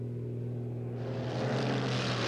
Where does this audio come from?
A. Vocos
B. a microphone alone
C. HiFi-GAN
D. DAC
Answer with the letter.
B